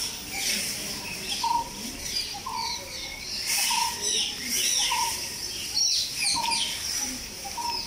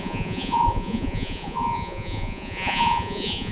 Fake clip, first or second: second